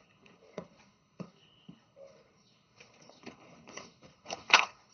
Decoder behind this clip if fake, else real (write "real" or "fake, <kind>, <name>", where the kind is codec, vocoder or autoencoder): fake, codec, HILCodec